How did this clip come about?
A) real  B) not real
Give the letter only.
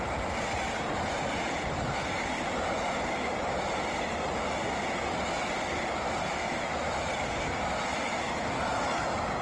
A